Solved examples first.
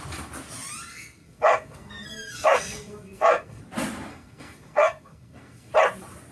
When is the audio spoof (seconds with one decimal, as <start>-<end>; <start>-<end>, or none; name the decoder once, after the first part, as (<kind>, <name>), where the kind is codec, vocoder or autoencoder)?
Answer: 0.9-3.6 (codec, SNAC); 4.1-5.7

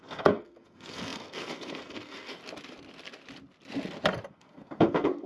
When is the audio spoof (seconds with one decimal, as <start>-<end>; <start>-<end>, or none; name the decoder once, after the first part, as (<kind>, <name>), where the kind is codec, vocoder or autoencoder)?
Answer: 0.0-2.4 (codec, SNAC); 4.3-5.3

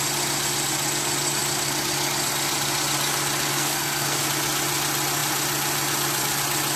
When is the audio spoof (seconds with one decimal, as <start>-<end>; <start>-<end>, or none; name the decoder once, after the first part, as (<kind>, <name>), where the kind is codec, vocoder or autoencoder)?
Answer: 3.5-4.2 (codec, SNAC)